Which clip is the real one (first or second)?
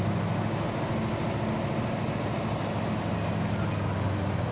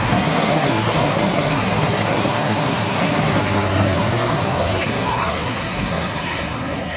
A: first